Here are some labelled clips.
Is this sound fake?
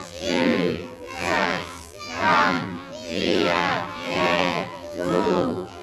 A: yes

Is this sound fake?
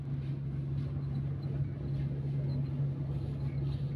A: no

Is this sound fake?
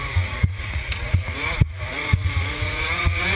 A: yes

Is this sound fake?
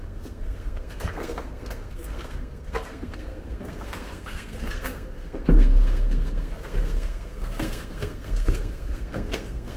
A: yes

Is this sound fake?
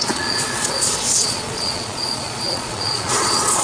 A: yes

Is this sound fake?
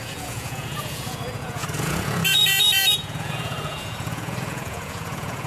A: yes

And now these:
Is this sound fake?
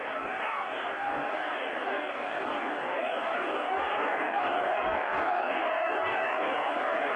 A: yes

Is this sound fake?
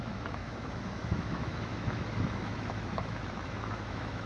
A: yes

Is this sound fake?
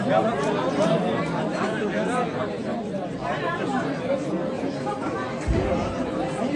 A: no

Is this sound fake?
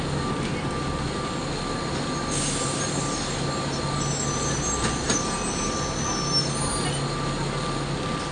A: no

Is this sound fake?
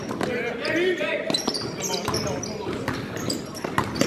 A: no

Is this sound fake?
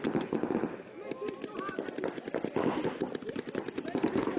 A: no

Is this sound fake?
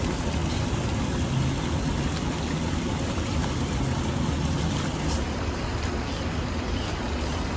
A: no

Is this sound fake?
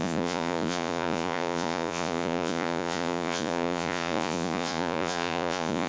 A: yes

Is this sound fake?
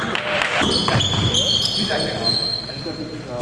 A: no